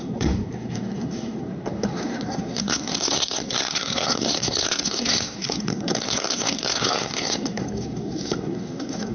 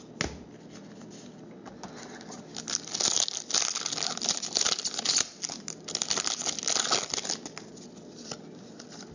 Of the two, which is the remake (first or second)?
first